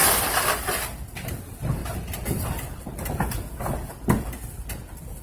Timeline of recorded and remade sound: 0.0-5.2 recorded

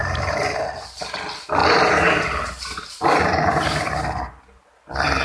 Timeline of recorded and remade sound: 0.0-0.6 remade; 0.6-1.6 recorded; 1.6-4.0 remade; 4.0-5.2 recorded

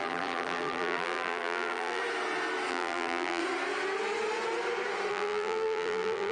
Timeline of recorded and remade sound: 0.0-2.0 remade; 2.0-2.7 recorded; 2.7-3.4 remade; 3.4-5.1 recorded; 5.1-6.3 remade